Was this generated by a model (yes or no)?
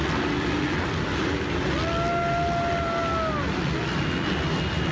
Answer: no